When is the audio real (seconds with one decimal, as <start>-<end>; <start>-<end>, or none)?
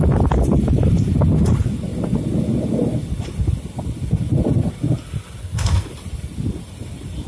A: 0.0-5.4; 5.9-7.3